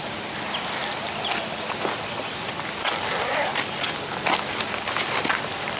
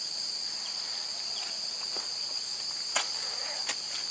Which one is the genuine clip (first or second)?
second